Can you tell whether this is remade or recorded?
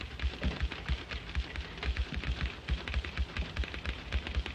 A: recorded